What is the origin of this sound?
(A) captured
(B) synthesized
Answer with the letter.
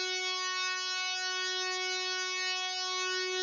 A